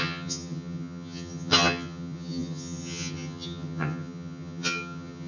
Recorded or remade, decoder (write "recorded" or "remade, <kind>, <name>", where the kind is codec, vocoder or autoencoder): remade, vocoder, HiFi-GAN